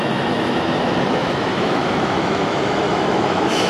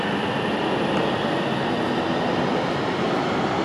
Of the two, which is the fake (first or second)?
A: first